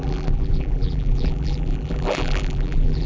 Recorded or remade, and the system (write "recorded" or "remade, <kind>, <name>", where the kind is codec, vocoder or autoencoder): remade, vocoder, BigVGAN v2